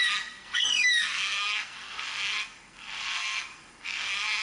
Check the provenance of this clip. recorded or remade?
remade